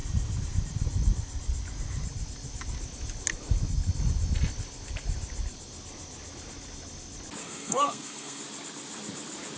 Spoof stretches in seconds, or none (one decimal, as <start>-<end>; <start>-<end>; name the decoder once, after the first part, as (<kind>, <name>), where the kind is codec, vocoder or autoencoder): 7.4-8.4 (codec, SNAC)